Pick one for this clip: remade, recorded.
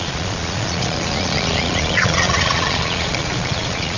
remade